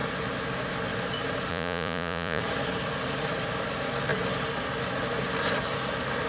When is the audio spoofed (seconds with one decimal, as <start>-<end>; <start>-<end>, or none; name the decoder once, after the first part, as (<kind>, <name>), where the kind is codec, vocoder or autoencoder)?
1.5-2.4 (vocoder, Vocos)